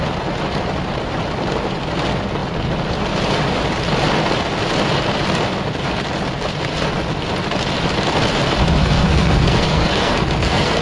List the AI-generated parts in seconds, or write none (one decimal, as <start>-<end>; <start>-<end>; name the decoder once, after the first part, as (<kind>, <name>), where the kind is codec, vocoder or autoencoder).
8.8-10.8 (codec, SNAC)